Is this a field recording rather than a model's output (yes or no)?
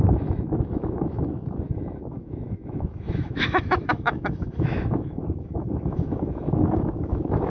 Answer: no